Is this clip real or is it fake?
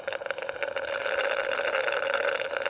real